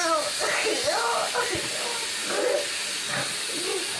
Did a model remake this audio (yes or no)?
no